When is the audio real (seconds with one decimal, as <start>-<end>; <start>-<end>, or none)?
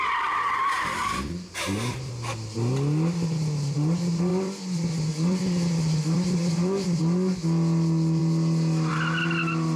0.0-1.0; 2.1-4.3; 7.0-9.8